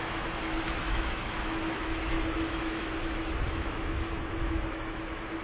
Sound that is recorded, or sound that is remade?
remade